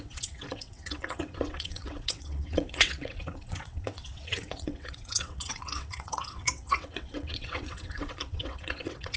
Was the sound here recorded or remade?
remade